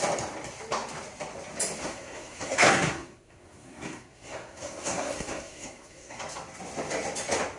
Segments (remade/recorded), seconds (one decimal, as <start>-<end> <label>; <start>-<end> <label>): 0.0-1.8 recorded; 1.8-6.2 remade; 6.2-7.6 recorded